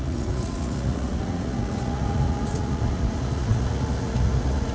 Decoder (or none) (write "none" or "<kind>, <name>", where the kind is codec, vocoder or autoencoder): vocoder, Vocos